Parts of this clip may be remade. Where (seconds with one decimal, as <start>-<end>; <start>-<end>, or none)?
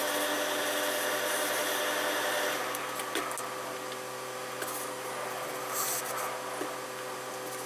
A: none